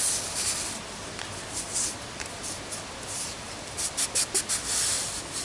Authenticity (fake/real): fake